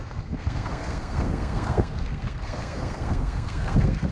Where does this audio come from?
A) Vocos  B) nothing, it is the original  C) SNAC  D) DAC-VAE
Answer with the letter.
C